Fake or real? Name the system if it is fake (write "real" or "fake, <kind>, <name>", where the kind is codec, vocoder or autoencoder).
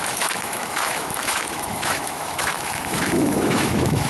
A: fake, autoencoder, DAC-VAE